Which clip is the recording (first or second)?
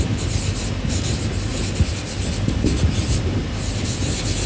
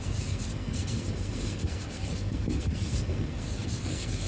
first